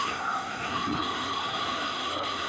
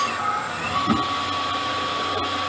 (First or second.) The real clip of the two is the second